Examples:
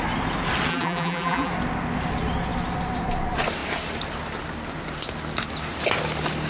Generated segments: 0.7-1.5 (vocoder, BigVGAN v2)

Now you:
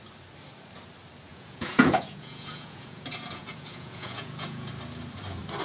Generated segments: 1.3-4.7 (vocoder, Vocos)

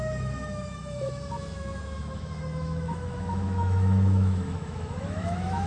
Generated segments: 0.0-5.7 (autoencoder, DAC-VAE)

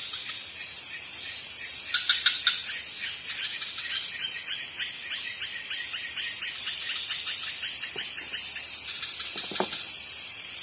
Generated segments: none